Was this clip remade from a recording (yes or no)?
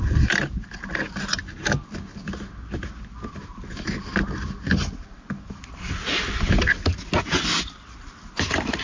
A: no